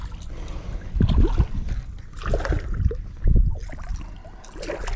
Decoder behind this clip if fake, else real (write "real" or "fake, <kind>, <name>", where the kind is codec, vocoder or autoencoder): real